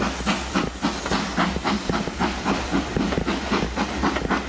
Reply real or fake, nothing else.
real